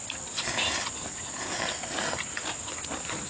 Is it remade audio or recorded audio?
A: recorded